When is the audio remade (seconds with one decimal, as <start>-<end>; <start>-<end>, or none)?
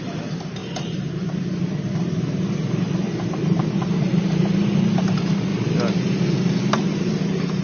0.0-5.5; 6.6-7.6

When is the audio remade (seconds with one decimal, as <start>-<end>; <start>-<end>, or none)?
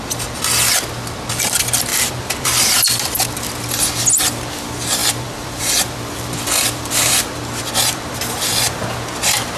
1.9-3.2; 5.0-8.2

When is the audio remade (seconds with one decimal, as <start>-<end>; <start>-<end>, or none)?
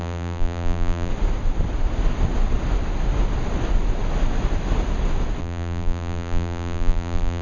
0.0-1.1; 5.4-7.4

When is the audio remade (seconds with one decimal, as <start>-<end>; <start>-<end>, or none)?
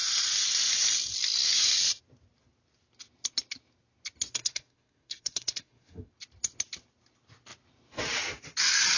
4.3-6.1